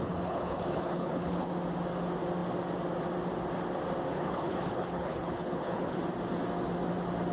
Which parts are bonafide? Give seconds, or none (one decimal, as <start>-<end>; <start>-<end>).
1.5-4.1; 6.0-7.3